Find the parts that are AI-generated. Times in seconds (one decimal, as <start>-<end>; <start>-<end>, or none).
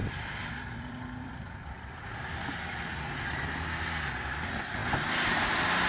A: 0.0-2.4